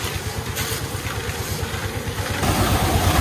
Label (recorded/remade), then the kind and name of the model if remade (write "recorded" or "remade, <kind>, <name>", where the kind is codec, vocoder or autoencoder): recorded